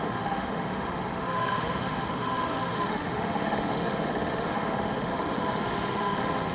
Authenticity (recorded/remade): remade